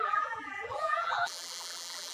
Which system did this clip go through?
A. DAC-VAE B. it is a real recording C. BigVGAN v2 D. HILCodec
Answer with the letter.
C